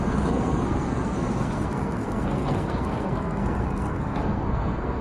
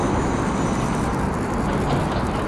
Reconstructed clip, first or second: first